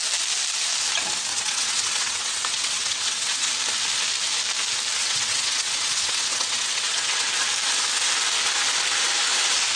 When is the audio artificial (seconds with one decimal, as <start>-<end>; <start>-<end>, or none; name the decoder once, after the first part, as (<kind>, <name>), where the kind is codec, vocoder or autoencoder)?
1.3-3.5 (vocoder, WaveNeXt); 5.0-7.3

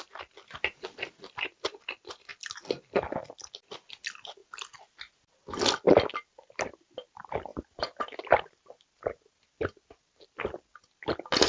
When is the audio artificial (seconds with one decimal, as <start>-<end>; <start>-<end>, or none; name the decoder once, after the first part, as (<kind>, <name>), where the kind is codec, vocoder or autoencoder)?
none

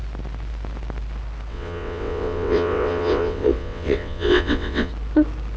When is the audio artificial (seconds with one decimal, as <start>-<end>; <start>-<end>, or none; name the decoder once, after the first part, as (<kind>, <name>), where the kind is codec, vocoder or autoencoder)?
1.5-4.9 (vocoder, WaveNeXt)

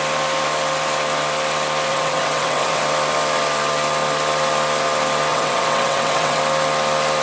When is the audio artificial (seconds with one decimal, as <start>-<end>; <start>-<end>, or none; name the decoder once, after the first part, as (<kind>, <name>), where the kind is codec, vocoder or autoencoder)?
1.9-2.8 (vocoder, WaveNeXt); 5.3-6.4

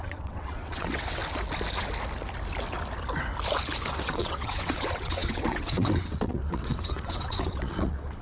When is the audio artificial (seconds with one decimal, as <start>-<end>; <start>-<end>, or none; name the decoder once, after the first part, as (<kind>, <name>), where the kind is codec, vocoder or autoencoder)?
0.0-1.2 (vocoder, WaveNeXt); 3.9-8.2

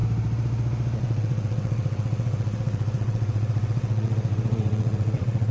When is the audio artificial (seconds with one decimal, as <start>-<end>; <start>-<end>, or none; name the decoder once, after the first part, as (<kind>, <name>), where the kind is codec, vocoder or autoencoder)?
1.0-5.5 (vocoder, WaveNeXt)

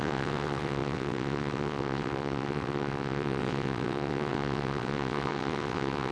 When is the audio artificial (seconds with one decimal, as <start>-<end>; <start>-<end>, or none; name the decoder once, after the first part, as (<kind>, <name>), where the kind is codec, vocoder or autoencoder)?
0.0-6.1 (vocoder, WaveNeXt)